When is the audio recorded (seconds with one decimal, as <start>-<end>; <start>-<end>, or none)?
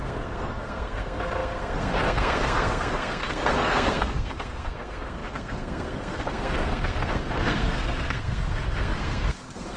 none